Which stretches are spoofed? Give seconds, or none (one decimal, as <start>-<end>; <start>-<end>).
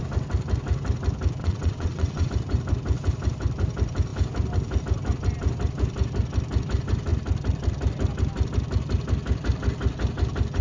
1.4-2.3